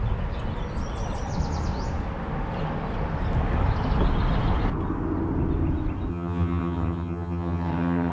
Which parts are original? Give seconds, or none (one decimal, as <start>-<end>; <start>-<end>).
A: 0.0-6.1